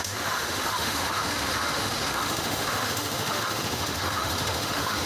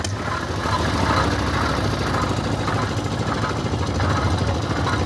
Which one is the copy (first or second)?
first